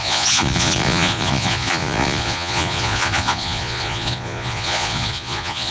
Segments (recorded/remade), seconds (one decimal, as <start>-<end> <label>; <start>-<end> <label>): 0.0-5.7 remade